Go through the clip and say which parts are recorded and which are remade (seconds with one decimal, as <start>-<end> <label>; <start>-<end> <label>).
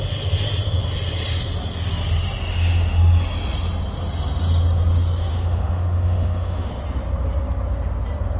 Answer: 0.0-2.5 recorded; 2.5-3.0 remade; 3.0-5.3 recorded; 5.3-6.7 remade; 6.7-8.4 recorded